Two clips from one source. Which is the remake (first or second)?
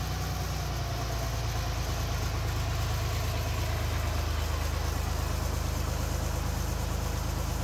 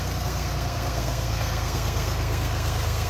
second